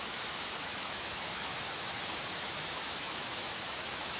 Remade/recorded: remade